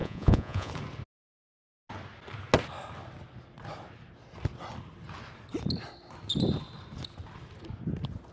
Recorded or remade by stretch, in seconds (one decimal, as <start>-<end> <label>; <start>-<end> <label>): 0.0-0.7 remade; 0.7-8.3 recorded